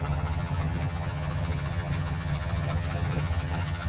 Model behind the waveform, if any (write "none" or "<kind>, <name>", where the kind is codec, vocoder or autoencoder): vocoder, HiFi-GAN